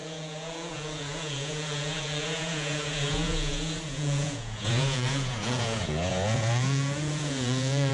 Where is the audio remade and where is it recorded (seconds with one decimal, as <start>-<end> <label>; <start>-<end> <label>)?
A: 0.0-7.9 remade